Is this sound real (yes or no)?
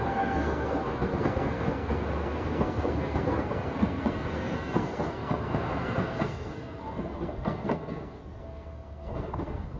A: no